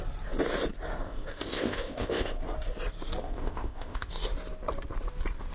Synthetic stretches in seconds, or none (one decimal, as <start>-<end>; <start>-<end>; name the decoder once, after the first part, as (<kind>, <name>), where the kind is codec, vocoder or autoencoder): 1.0-2.4 (codec, ZipCodec); 3.2-4.1